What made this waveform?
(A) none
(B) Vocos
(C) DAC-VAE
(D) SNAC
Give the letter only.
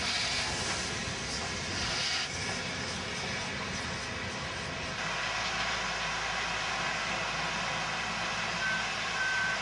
A